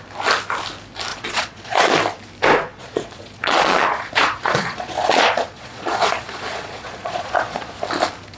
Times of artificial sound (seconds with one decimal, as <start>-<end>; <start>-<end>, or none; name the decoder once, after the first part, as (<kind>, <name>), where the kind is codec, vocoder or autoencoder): 1.1-1.9 (vocoder, Vocos); 2.7-7.7